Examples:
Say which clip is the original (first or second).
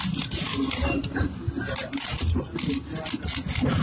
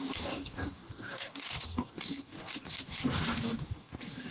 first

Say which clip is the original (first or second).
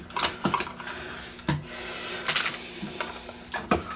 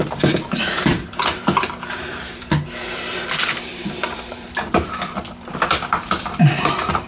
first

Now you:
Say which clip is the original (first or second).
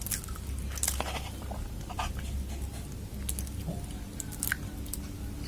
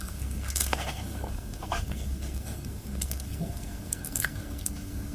first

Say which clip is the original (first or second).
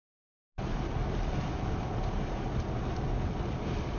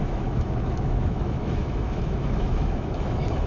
first